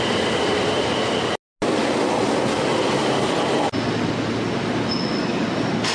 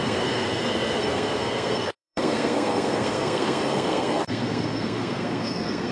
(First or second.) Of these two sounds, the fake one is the second